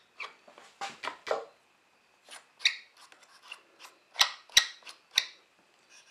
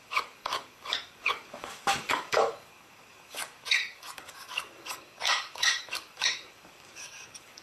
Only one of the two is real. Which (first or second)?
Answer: first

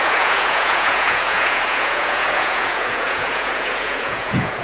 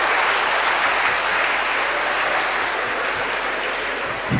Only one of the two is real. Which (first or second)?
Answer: second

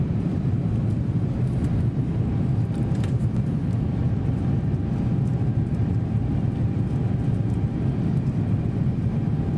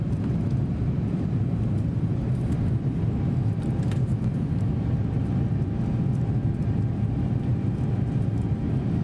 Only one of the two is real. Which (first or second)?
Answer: second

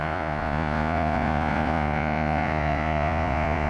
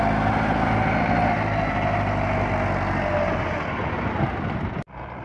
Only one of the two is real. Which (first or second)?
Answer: second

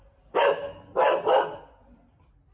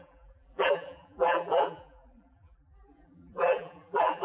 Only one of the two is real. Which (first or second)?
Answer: first